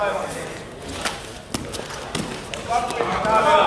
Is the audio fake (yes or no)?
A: no